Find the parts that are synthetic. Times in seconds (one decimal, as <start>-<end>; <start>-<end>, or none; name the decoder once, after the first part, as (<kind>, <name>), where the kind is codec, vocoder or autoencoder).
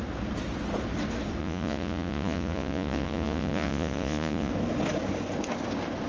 1.4-4.5 (vocoder, Vocos)